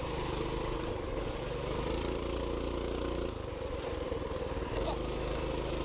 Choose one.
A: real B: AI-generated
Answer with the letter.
B